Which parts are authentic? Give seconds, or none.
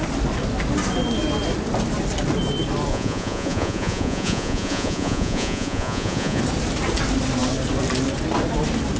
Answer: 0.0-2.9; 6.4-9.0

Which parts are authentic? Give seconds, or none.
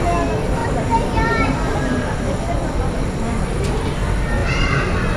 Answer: 0.0-0.6; 3.7-4.4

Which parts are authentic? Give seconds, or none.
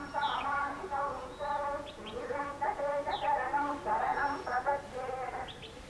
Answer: 2.9-4.1; 4.8-5.9